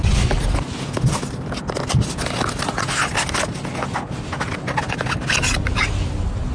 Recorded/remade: recorded